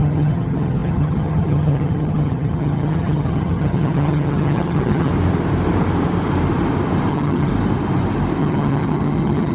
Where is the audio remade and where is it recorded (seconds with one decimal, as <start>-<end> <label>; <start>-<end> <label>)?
0.0-5.1 remade; 5.1-7.1 recorded; 7.1-7.5 remade; 7.5-8.4 recorded; 8.4-9.5 remade